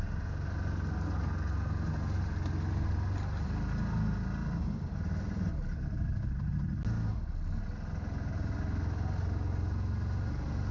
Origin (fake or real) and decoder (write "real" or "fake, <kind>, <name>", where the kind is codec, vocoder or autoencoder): real